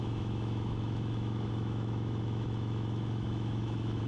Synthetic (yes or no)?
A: yes